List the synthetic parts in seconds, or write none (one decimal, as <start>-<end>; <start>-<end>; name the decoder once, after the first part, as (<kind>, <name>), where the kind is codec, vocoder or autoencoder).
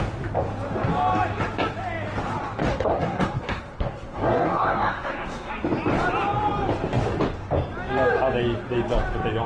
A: 2.7-5.5 (codec, SNAC)